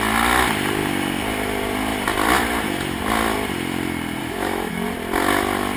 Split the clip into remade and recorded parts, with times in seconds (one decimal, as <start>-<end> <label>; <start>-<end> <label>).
0.0-4.2 recorded; 4.2-4.7 remade; 4.7-5.8 recorded